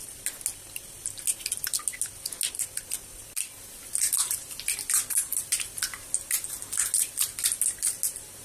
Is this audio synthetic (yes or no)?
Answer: no